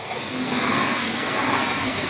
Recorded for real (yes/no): no